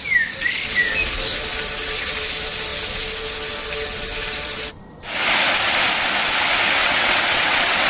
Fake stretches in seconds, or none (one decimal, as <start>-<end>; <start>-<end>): 6.8-7.9